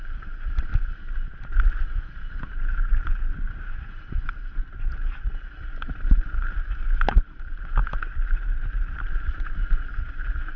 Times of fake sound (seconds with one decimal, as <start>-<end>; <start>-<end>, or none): none